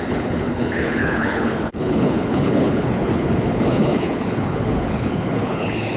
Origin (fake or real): fake